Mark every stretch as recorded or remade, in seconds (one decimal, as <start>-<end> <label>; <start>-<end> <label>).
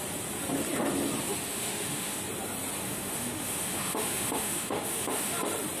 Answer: 0.0-1.5 recorded; 1.5-2.2 remade; 2.2-2.8 recorded; 2.8-5.3 remade; 5.3-5.8 recorded